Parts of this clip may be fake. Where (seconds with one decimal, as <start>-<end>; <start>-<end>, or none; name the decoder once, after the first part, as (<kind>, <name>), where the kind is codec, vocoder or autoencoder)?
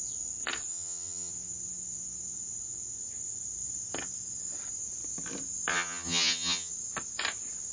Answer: 0.7-1.3 (vocoder, HiFi-GAN); 5.7-6.7